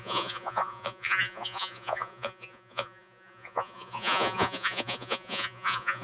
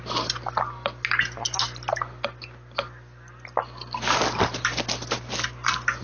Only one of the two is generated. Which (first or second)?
first